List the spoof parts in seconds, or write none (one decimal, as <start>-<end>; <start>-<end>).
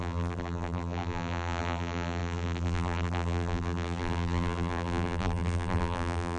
0.0-6.4